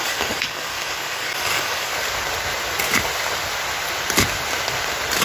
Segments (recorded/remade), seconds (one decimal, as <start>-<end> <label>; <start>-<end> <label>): 0.0-1.9 remade; 1.9-5.2 recorded